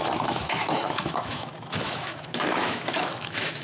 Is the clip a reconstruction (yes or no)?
yes